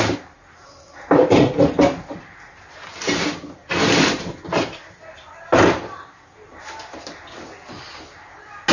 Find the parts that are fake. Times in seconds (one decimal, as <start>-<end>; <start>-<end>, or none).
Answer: none